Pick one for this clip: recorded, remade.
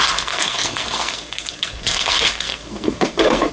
remade